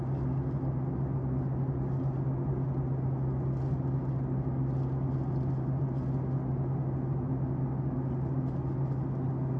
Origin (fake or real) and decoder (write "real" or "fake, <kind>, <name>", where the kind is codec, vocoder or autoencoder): real